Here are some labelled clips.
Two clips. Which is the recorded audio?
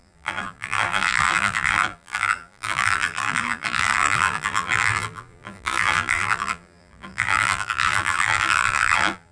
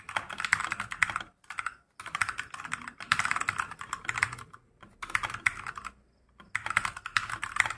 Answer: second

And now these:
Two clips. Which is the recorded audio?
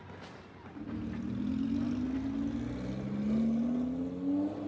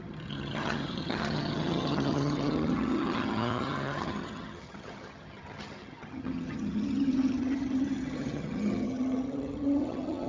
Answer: first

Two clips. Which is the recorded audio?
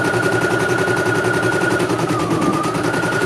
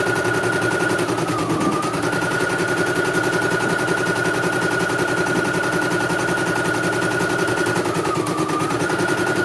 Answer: second